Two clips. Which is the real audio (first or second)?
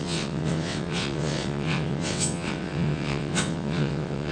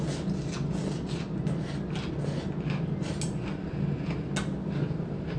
second